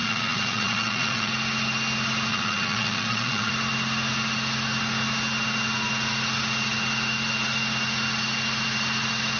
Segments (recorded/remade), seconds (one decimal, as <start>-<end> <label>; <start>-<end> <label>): 0.0-1.3 remade; 1.3-2.3 recorded; 2.3-3.5 remade; 3.5-9.4 recorded